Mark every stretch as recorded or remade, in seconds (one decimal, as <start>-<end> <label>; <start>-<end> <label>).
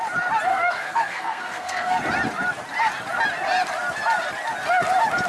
0.0-0.5 recorded; 0.5-2.0 remade; 2.0-5.3 recorded